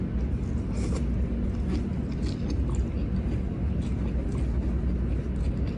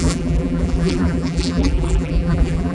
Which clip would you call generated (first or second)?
second